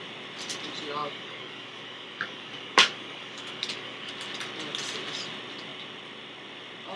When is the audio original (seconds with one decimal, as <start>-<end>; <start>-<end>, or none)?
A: 0.0-1.0; 4.1-7.0